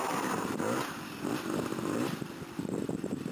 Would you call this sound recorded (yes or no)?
no